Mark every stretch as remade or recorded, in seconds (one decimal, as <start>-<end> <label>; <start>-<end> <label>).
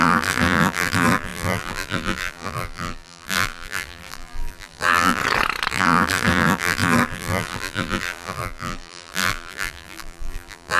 0.0-5.2 remade; 5.2-5.7 recorded; 5.7-10.8 remade